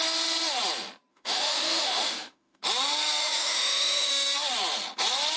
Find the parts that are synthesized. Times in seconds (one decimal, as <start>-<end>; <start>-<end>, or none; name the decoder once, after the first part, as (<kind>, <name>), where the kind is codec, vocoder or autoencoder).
1.1-2.6 (autoencoder, DAC-VAE); 3.2-4.1